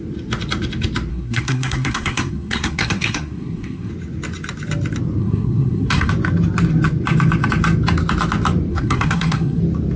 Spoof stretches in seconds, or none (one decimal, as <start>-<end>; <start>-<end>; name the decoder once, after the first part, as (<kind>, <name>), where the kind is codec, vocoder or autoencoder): 1.1-3.9 (codec, SNAC); 5.2-6.1; 8.7-9.6